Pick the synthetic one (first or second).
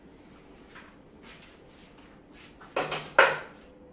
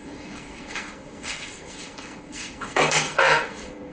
second